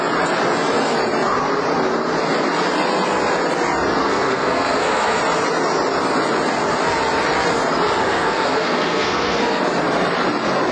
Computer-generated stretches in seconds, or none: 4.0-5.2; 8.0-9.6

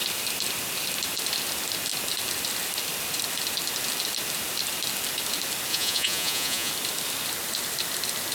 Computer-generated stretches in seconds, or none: 5.7-6.7

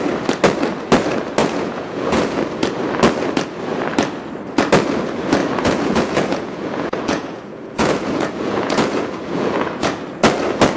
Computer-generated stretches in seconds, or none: 1.4-2.4; 5.4-10.0

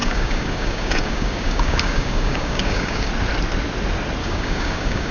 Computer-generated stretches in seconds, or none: 0.0-3.1; 4.2-5.1

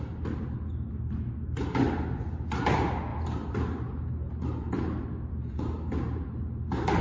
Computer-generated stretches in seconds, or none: none

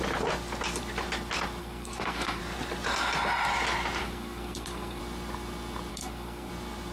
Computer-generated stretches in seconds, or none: 1.6-2.4; 4.0-5.0; 5.9-6.5